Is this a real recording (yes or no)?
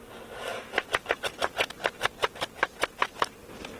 yes